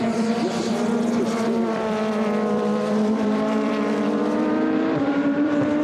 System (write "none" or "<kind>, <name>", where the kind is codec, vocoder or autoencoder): vocoder, BigVGAN v2